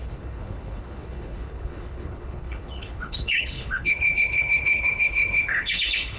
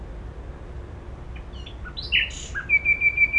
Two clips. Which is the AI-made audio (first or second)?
first